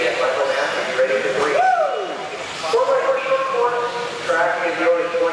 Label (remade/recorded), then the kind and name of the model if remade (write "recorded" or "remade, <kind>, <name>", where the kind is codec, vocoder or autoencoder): recorded